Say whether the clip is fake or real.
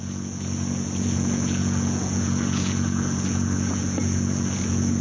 fake